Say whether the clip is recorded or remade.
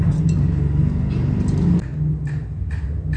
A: recorded